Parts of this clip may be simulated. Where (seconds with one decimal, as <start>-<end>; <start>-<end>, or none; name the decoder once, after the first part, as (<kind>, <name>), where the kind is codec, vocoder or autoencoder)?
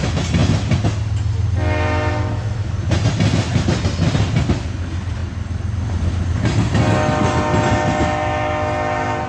none